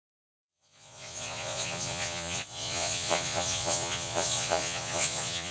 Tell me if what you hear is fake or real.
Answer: fake